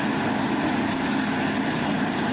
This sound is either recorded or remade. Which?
recorded